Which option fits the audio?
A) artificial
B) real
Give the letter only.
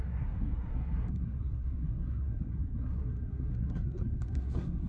A